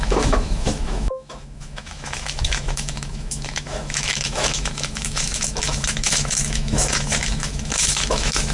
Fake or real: fake